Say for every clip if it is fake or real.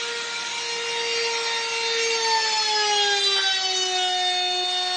real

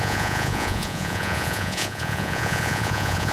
fake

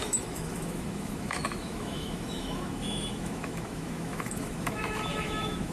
fake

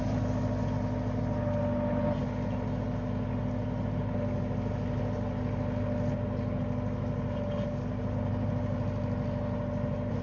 real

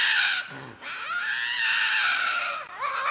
real